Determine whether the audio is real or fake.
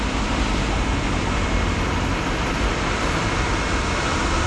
real